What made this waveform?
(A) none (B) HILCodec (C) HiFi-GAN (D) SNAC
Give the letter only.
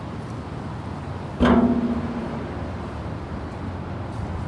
A